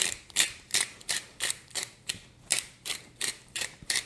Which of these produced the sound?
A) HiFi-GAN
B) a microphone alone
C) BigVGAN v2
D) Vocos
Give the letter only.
C